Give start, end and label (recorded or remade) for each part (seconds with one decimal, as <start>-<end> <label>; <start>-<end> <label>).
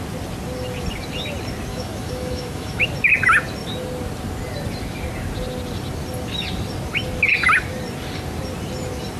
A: 0.0-1.7 recorded; 1.7-2.9 remade; 2.9-9.2 recorded